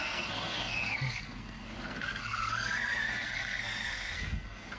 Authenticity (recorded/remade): remade